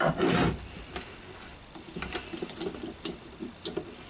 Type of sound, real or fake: real